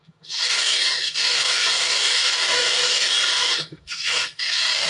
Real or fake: fake